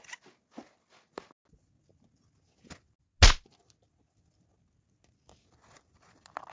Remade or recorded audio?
recorded